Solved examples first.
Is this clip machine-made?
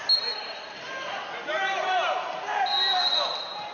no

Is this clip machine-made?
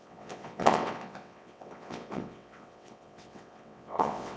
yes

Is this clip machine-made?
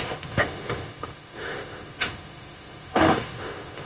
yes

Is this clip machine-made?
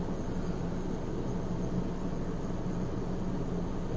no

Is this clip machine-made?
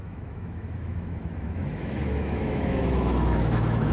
yes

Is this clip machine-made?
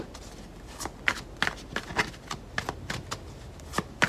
no